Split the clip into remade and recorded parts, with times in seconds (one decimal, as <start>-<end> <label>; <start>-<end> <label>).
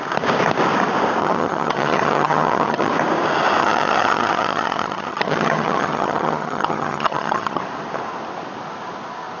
0.0-1.2 recorded; 1.2-2.9 remade; 2.9-3.6 recorded; 3.6-7.6 remade; 7.6-9.4 recorded